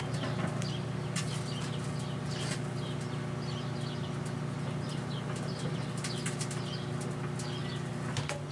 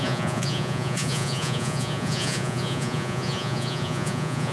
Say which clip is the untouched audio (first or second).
first